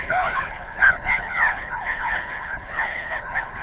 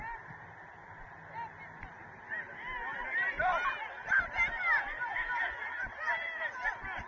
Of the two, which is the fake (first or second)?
first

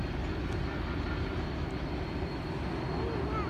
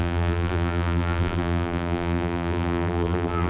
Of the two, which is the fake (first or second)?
second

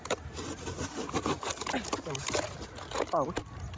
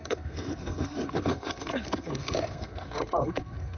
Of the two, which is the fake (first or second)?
second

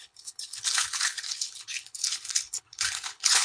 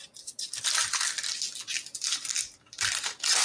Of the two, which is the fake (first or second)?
first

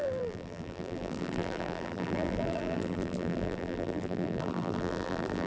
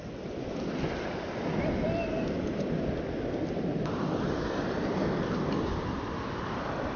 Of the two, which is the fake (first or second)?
first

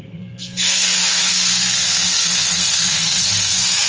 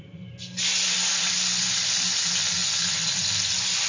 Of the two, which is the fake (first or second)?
first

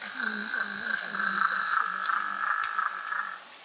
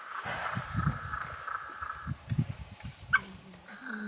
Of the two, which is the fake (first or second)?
second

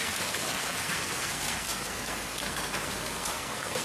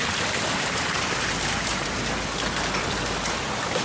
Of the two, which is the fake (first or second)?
first